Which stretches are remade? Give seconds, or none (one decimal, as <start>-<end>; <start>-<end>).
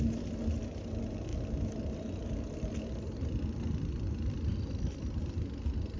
none